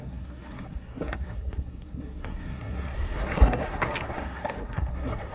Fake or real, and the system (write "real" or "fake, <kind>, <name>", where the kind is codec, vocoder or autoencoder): fake, codec, SNAC